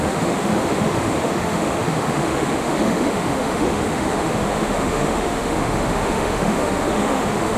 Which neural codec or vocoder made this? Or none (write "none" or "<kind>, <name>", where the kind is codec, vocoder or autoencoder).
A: autoencoder, DAC-VAE